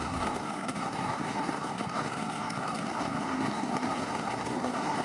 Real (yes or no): no